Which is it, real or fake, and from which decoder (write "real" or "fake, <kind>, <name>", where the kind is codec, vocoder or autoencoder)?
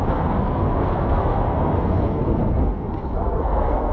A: fake, codec, SNAC